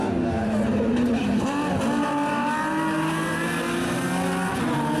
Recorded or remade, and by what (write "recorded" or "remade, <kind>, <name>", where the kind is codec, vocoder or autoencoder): recorded